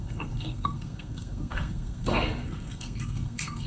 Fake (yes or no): yes